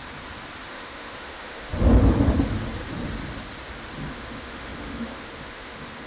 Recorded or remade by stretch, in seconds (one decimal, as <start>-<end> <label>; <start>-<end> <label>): 0.0-0.7 recorded; 0.7-1.7 remade; 1.7-4.1 recorded; 4.1-6.1 remade